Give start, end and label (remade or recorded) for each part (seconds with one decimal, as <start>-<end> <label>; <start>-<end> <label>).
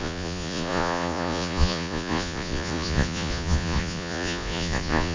0.0-5.1 remade